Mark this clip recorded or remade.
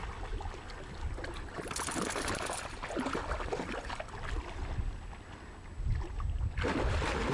recorded